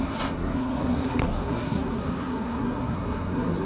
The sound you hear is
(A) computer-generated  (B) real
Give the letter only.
A